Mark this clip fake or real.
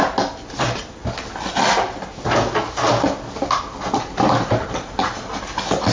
real